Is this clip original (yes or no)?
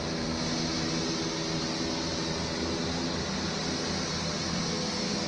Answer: yes